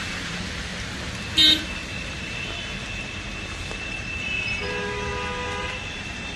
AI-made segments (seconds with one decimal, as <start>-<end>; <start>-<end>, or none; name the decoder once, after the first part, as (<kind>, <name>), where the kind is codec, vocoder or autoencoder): 0.0-1.8 (vocoder, BigVGAN v2); 3.7-5.1; 6.0-6.4